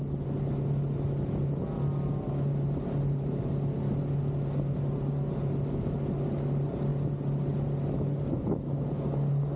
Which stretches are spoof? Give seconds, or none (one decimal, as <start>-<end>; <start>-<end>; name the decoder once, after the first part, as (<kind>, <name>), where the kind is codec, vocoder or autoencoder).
none